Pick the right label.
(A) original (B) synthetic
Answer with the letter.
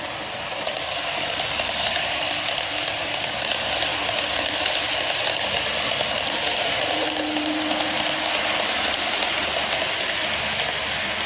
A